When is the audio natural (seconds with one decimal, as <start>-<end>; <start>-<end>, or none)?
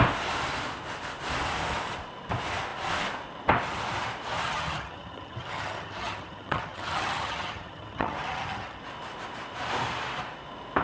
0.0-4.4; 8.8-10.8